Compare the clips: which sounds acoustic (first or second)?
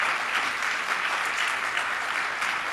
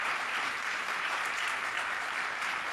first